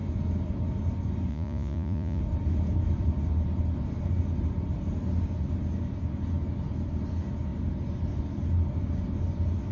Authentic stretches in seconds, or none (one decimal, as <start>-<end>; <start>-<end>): 0.0-1.3; 2.2-9.7